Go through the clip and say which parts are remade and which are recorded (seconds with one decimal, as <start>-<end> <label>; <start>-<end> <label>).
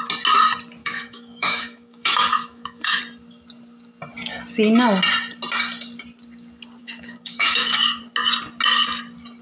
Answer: 0.0-0.8 recorded; 0.8-3.0 remade; 3.0-6.8 recorded; 6.8-8.0 remade; 8.0-9.4 recorded